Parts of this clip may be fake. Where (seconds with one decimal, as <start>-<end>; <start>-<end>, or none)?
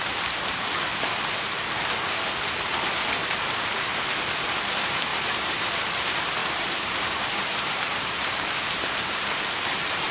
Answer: 0.9-1.6; 3.2-3.7; 5.1-5.7; 6.4-8.8